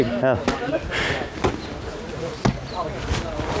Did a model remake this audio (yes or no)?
no